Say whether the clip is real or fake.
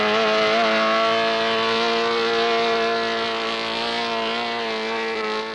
real